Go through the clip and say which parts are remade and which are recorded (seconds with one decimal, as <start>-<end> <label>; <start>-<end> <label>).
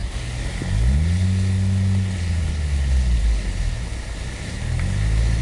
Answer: 0.0-5.4 recorded